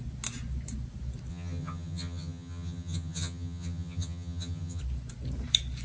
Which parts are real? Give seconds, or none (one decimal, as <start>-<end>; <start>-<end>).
0.0-1.3; 4.8-5.8